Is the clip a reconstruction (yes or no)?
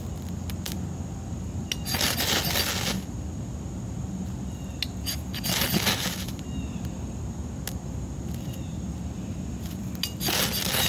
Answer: no